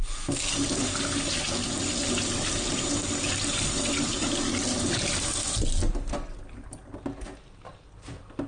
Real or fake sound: real